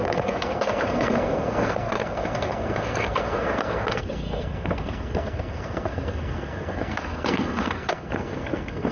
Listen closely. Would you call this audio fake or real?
fake